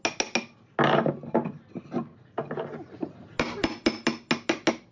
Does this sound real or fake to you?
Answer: real